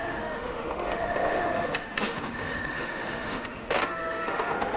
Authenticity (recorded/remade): remade